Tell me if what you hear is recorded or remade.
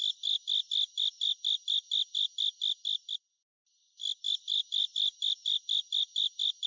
recorded